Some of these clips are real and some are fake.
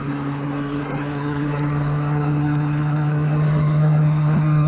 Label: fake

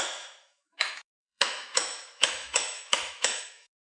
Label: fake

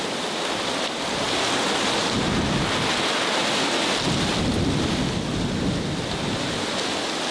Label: real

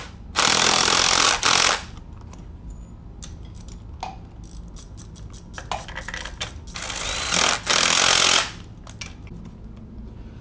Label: real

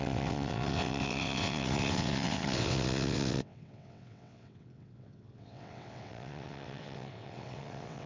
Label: fake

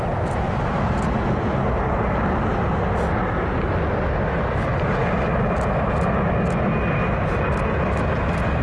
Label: real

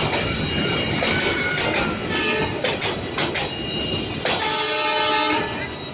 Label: real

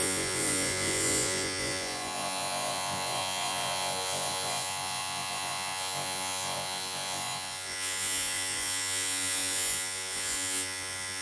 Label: fake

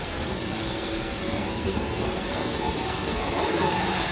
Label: fake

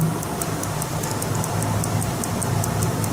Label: real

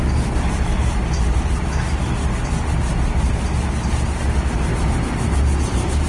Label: real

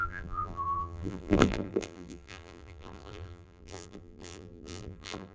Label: fake